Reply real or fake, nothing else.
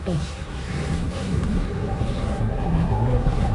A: fake